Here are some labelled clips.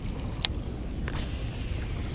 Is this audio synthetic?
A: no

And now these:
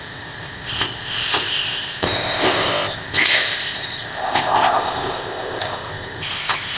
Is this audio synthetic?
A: yes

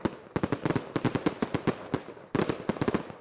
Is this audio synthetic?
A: no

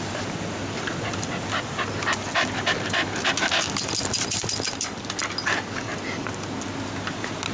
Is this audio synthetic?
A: no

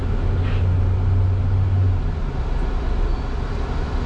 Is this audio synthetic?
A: no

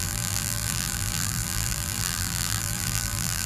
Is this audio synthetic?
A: yes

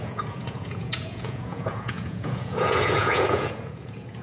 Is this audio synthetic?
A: yes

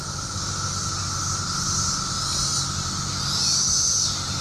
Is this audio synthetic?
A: no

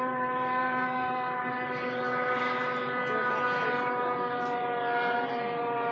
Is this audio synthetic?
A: yes